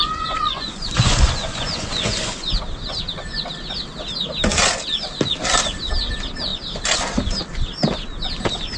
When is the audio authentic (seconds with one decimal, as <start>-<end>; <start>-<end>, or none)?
2.5-8.8